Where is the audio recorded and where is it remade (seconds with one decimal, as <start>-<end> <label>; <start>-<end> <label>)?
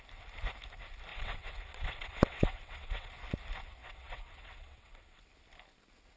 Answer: 0.0-1.1 recorded; 1.1-3.1 remade; 3.1-3.8 recorded; 3.8-5.2 remade; 5.2-6.2 recorded